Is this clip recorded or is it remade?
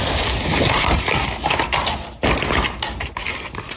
recorded